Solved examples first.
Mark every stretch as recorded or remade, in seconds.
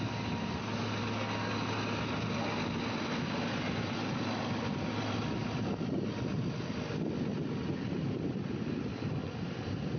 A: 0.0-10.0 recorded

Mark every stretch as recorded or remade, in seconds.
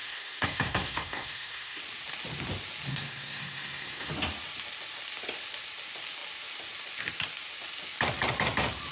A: 0.0-1.8 remade; 1.8-2.9 recorded; 2.9-4.1 remade; 4.1-8.9 recorded